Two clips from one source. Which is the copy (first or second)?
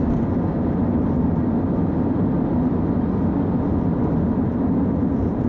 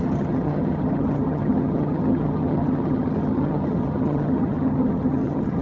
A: second